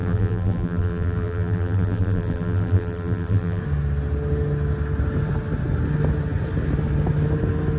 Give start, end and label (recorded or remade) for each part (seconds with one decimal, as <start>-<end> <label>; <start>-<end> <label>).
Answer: 0.0-3.6 remade; 3.6-7.8 recorded